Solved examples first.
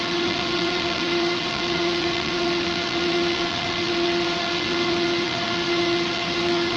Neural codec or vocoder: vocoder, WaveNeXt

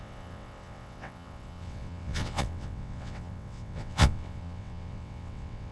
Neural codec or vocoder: vocoder, WaveNeXt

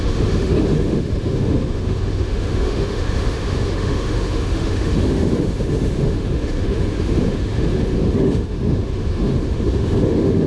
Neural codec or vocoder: autoencoder, DAC-VAE